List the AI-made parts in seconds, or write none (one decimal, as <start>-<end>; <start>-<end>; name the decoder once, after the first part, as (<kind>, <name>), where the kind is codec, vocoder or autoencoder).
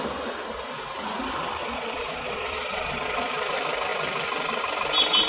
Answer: 1.6-3.5 (vocoder, Vocos)